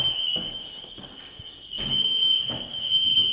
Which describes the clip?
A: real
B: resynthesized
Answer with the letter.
B